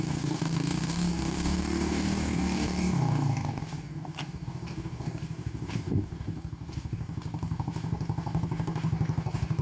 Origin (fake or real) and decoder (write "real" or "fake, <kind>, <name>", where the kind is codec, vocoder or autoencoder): fake, codec, DAC